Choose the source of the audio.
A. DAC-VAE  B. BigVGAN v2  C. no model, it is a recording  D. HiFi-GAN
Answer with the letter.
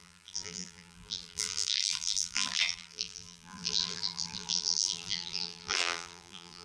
B